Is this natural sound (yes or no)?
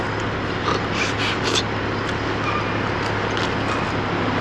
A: yes